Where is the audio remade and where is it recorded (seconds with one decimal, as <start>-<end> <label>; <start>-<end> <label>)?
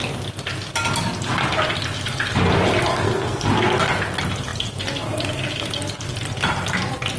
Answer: 0.0-2.9 recorded; 2.9-3.5 remade; 3.5-7.2 recorded